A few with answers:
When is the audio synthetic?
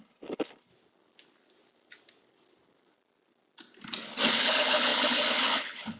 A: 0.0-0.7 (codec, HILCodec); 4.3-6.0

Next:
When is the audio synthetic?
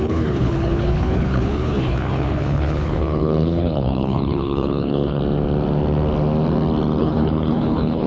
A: 0.0-5.2 (codec, HILCodec); 7.0-8.1